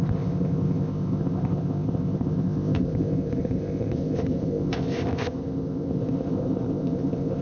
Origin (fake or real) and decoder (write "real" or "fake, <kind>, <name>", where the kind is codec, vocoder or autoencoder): fake, codec, ZipCodec